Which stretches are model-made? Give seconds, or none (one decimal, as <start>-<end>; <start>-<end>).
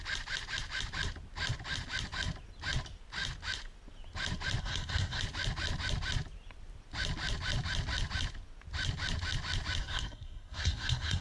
4.6-5.2; 9.8-11.2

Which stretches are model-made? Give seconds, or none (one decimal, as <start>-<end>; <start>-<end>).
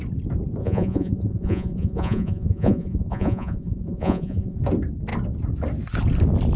0.6-4.6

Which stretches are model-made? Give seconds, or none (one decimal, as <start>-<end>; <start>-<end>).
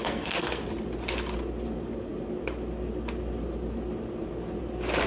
0.0-0.6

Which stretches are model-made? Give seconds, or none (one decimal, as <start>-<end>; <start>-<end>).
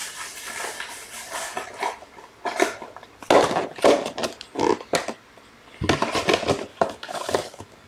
6.7-7.9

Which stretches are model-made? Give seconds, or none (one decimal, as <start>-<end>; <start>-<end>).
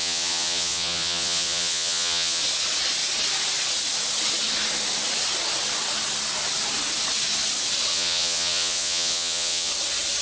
0.0-2.4; 7.9-9.7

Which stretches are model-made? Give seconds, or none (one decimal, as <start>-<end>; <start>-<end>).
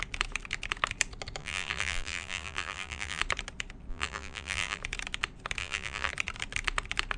1.4-3.2; 3.9-4.8; 5.6-6.1